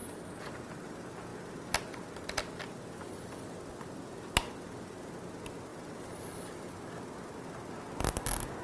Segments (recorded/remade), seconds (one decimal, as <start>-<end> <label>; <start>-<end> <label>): 0.0-5.7 recorded; 5.7-6.7 remade; 6.7-8.6 recorded